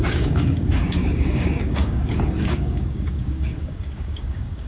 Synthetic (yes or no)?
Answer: yes